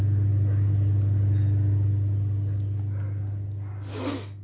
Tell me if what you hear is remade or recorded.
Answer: recorded